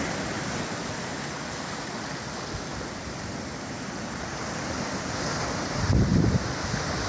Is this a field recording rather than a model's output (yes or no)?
yes